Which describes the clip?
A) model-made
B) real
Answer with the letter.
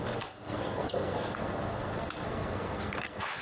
A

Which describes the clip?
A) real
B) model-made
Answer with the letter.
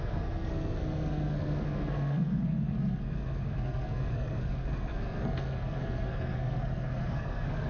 B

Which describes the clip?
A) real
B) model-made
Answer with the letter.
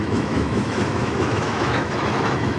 B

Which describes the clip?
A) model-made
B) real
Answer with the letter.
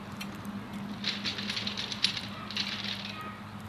B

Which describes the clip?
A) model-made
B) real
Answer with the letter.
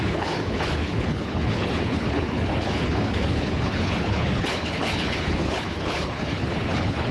A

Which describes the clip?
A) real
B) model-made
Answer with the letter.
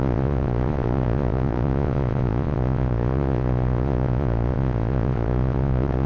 B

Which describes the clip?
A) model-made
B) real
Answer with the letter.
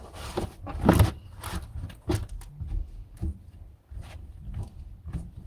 B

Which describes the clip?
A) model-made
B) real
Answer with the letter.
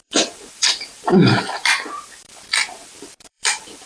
A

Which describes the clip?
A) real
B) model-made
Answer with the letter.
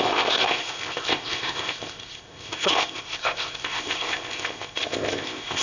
B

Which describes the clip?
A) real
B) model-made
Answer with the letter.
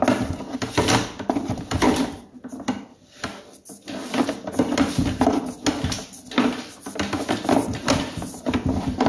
A